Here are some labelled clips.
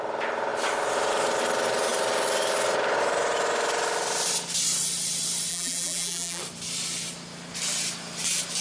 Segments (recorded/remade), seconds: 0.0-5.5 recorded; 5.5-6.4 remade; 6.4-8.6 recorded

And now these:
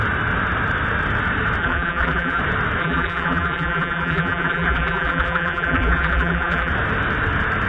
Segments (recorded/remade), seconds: 0.0-1.6 recorded; 1.6-2.4 remade; 2.4-2.8 recorded; 2.8-6.7 remade; 6.7-7.7 recorded

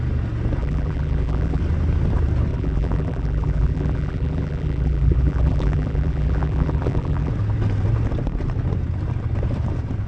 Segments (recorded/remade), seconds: 0.0-0.6 recorded; 0.6-1.6 remade; 1.6-2.5 recorded; 2.5-7.3 remade; 7.3-10.1 recorded

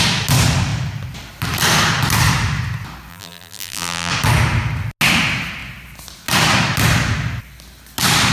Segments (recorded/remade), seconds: 0.0-3.1 recorded; 3.1-4.1 remade; 4.1-8.3 recorded

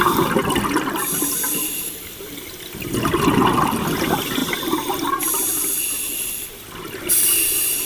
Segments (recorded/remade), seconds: 0.0-7.9 recorded

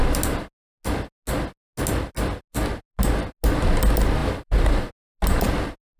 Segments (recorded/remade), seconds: 0.0-4.2 recorded; 4.2-4.9 remade; 4.9-6.0 recorded

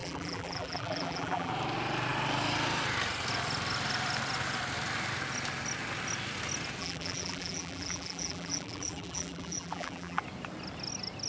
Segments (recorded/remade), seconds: 0.0-1.5 remade; 1.5-6.8 recorded; 6.8-10.2 remade; 10.2-11.3 recorded

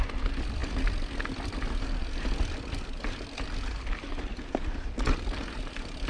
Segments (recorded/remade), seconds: 0.0-6.1 recorded